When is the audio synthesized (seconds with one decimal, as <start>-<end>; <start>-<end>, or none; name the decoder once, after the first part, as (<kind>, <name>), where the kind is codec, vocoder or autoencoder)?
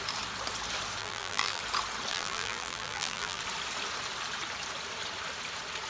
1.0-1.6 (vocoder, BigVGAN v2); 2.1-3.4